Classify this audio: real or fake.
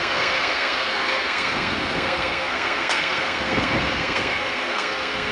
fake